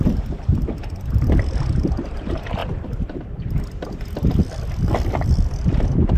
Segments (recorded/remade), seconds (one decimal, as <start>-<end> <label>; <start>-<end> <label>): 0.0-2.6 recorded; 2.6-3.6 remade; 3.6-6.2 recorded